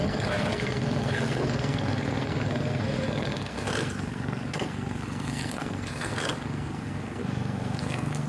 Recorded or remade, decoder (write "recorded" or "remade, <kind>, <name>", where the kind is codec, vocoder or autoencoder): remade, codec, SNAC